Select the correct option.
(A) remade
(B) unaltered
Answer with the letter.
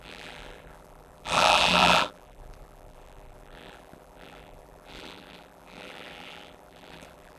A